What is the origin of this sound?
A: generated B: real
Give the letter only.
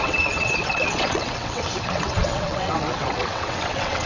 A